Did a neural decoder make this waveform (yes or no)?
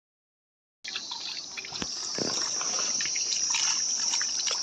no